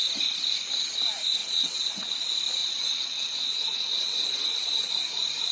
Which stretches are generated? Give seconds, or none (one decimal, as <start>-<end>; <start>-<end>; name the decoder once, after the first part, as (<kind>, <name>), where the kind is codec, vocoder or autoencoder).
1.4-2.1 (vocoder, WaveNeXt); 2.6-4.9